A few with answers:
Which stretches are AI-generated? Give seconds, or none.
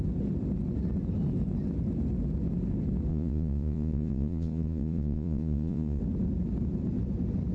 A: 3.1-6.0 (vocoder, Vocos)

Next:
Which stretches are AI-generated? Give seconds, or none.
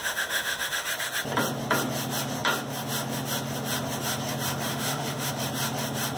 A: 0.0-0.9 (autoencoder, DAC-VAE); 4.7-5.3